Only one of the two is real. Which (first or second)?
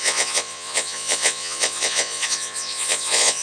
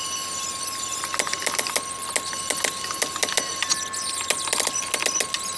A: second